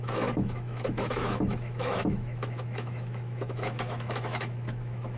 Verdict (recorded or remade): remade